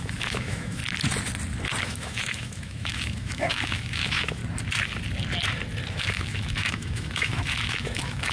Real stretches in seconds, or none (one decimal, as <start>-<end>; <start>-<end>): 0.8-1.8; 4.4-5.9